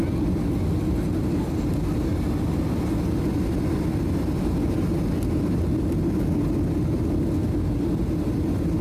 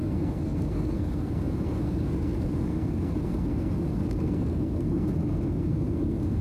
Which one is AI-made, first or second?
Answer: second